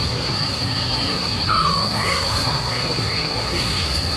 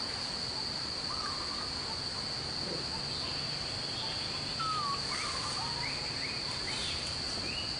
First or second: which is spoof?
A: first